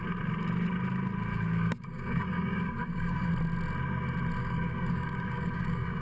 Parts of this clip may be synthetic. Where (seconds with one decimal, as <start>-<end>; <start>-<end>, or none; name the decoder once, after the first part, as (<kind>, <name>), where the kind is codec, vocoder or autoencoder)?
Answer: 1.3-3.3 (codec, DAC); 4.4-6.0